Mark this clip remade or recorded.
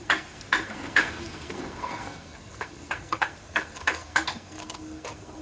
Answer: remade